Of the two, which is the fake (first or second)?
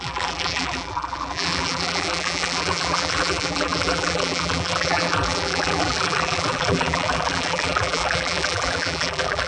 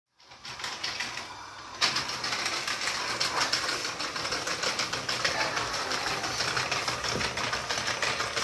first